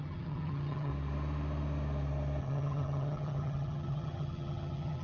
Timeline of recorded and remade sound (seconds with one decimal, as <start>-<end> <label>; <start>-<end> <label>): 0.0-0.9 remade; 0.9-2.4 recorded; 2.4-5.0 remade